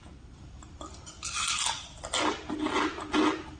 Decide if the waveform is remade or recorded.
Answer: recorded